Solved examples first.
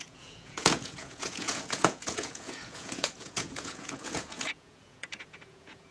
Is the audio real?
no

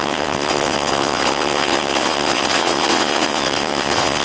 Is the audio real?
no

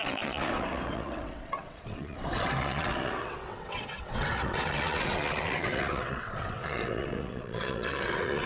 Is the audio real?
no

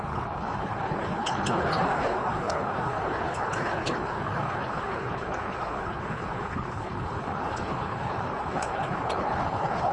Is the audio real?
no